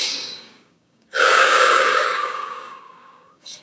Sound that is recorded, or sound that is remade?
remade